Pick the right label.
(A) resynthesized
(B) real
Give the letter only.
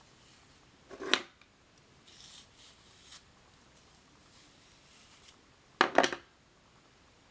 B